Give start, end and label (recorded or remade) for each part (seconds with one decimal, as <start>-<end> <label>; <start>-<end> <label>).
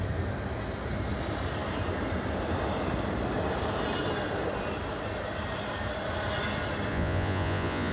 0.0-6.9 recorded; 6.9-7.9 remade